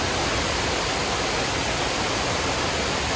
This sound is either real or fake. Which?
real